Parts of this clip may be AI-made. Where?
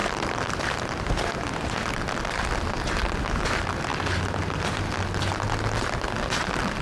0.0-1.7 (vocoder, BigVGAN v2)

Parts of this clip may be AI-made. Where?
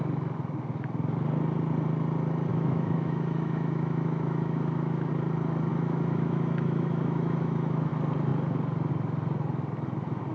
2.5-5.1 (autoencoder, DAC-VAE); 5.7-7.9